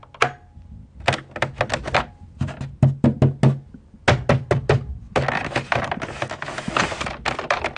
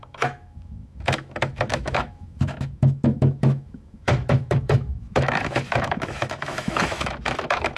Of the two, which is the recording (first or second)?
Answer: first